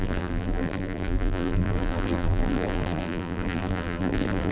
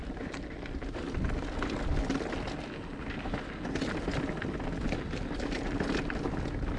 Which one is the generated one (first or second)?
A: first